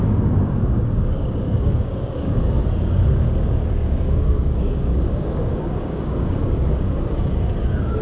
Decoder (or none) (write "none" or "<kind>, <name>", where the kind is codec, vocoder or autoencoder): codec, DAC